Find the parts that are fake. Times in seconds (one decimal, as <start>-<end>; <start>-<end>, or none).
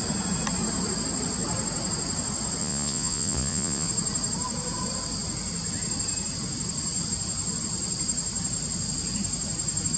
2.6-3.9